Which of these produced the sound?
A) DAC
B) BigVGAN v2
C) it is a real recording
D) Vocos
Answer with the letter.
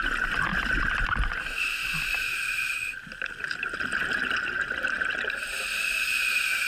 C